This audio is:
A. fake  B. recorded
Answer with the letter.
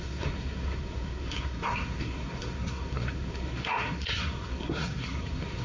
A